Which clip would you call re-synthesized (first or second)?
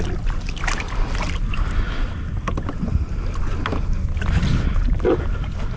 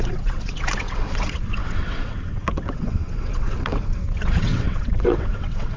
second